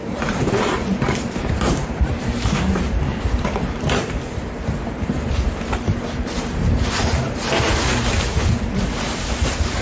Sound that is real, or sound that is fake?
fake